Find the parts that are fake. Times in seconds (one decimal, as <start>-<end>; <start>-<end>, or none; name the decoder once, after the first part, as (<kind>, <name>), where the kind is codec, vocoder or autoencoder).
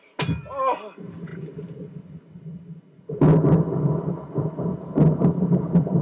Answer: none